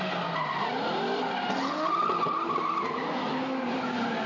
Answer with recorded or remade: recorded